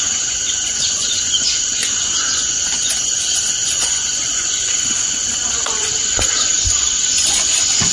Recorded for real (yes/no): no